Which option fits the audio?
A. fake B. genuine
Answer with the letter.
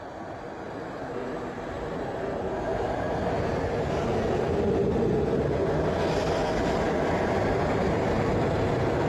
B